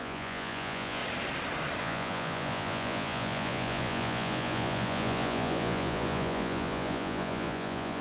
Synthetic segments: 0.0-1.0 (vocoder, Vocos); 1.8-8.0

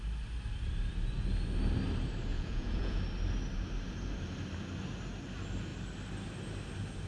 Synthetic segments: 2.3-3.0 (vocoder, Vocos)

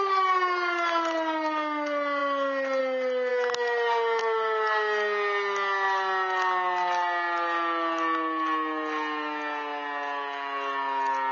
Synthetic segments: none

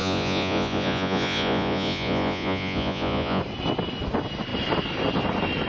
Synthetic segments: 0.0-3.4 (vocoder, Vocos)

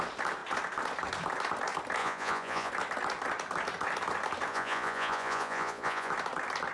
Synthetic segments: 2.0-2.7 (vocoder, Vocos); 4.5-6.1

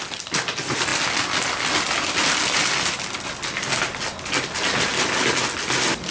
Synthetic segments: none

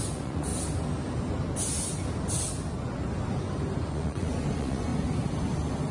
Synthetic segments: 0.0-0.5 (vocoder, Vocos); 3.8-4.9

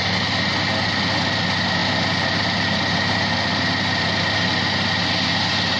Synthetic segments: none